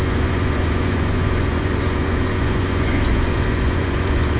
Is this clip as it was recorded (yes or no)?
no